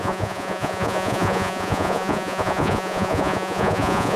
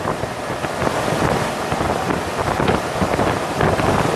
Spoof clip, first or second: first